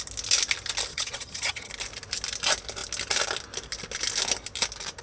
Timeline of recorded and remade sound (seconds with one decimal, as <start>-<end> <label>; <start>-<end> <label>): 0.0-0.9 recorded; 0.9-1.7 remade; 1.7-5.0 recorded